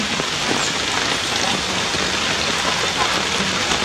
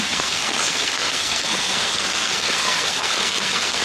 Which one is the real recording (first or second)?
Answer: first